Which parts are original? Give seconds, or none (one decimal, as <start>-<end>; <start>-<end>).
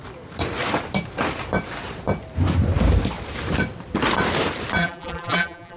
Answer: 0.0-4.8